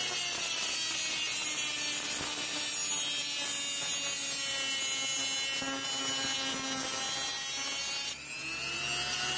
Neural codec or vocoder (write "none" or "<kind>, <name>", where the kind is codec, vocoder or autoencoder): none